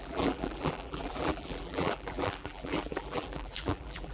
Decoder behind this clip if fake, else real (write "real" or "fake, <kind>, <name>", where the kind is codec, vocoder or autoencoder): fake, vocoder, BigVGAN v2